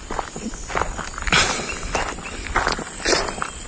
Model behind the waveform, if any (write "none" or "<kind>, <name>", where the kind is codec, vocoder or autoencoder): none